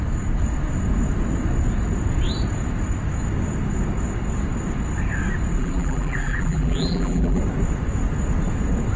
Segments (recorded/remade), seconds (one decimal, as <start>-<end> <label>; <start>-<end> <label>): 0.0-5.6 recorded; 5.6-7.4 remade; 7.4-9.0 recorded